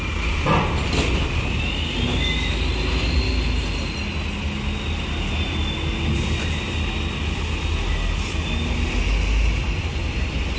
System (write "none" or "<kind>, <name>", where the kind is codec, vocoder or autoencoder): none